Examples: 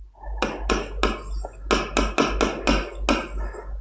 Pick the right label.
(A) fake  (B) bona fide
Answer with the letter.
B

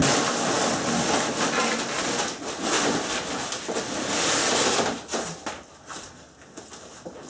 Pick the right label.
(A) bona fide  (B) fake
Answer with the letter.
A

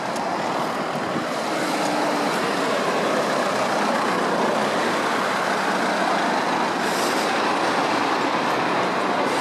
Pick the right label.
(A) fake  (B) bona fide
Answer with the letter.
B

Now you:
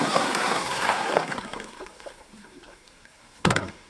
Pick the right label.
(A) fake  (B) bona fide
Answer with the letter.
A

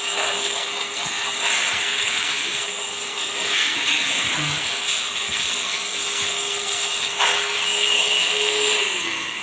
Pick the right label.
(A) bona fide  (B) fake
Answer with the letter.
B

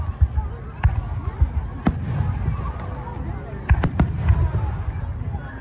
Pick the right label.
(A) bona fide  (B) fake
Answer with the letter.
A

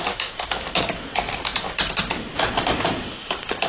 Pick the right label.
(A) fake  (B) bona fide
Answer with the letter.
B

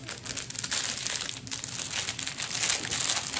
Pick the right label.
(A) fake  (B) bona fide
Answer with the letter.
B